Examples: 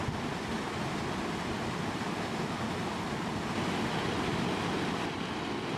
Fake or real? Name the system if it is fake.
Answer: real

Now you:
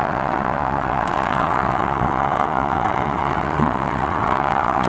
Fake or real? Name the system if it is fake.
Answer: fake, vocoder, WaveNeXt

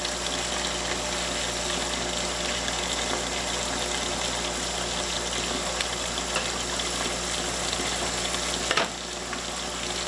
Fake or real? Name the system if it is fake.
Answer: real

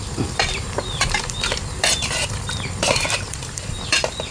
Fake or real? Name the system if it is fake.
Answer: fake, vocoder, BigVGAN v2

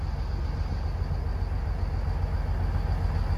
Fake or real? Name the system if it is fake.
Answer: real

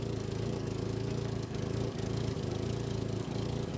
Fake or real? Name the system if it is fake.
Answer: fake, codec, DAC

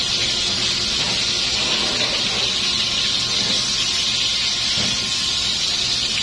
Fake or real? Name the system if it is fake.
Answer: real